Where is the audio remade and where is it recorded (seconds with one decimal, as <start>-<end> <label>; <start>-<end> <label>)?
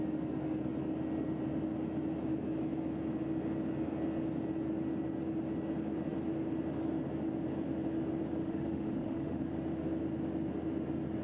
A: 0.0-8.4 recorded; 8.4-9.4 remade; 9.4-11.2 recorded